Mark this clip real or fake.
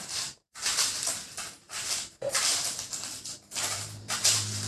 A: fake